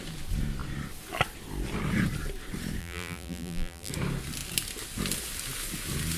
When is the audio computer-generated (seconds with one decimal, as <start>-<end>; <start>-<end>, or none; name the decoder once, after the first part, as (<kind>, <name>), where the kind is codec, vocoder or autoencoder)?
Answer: 2.8-3.9 (vocoder, BigVGAN v2)